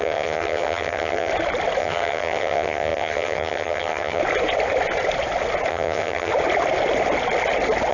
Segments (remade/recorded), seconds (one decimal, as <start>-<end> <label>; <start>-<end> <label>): 0.0-1.3 remade; 1.3-1.8 recorded; 1.8-4.2 remade; 4.2-5.7 recorded; 5.7-6.3 remade; 6.3-7.9 recorded